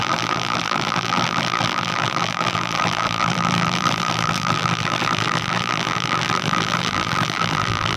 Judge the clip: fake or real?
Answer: fake